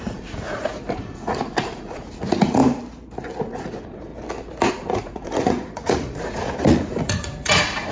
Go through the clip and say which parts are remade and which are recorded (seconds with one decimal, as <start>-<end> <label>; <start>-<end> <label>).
0.0-2.6 remade; 2.6-3.4 recorded; 3.4-4.1 remade; 4.1-4.7 recorded; 4.7-7.9 remade